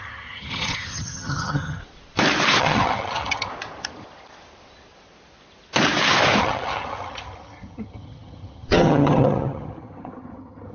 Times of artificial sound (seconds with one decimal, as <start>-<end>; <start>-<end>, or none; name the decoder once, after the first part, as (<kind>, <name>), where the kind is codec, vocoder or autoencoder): 0.0-1.8 (vocoder, HiFi-GAN); 2.6-3.5; 6.4-10.7